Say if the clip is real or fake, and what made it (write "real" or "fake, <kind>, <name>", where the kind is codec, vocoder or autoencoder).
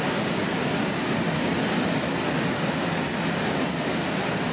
real